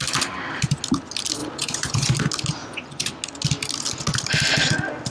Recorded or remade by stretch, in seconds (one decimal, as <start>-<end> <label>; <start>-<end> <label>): 0.0-1.4 recorded; 1.4-2.1 remade; 2.1-2.6 recorded; 2.6-3.1 remade; 3.1-5.1 recorded